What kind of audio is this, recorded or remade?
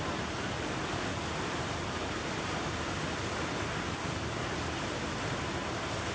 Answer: recorded